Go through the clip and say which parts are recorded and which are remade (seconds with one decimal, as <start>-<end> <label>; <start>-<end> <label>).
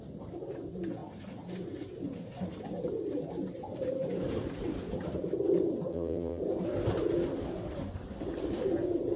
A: 0.0-5.9 recorded; 5.9-6.4 remade; 6.4-9.2 recorded